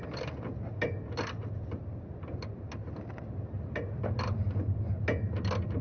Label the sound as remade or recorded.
recorded